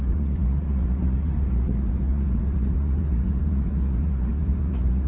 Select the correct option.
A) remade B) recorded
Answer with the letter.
A